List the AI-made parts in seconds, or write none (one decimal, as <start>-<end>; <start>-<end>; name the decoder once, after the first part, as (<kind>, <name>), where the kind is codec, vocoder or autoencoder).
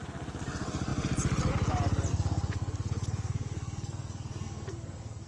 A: 2.1-5.3 (codec, SNAC)